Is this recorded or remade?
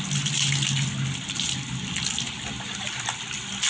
recorded